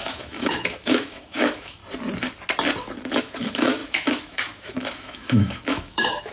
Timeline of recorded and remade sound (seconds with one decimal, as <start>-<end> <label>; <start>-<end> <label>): 0.0-1.8 remade; 1.8-3.2 recorded; 3.2-6.3 remade

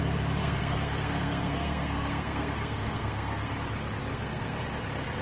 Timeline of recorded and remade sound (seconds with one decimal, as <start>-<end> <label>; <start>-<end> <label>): 0.0-0.4 recorded; 0.4-3.5 remade; 3.5-4.1 recorded; 4.1-4.6 remade; 4.6-5.2 recorded

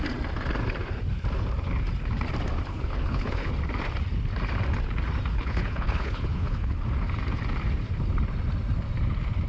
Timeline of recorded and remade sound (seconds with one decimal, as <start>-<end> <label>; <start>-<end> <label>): 0.0-2.7 recorded; 2.7-3.5 remade; 3.5-5.3 recorded; 5.3-6.8 remade; 6.8-9.5 recorded

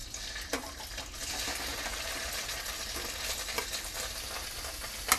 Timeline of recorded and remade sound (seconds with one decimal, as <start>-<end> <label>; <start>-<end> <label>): 0.0-0.7 remade; 0.7-5.2 recorded